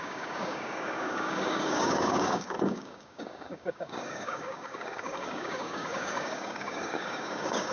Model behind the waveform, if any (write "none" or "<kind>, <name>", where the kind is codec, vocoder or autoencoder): codec, DAC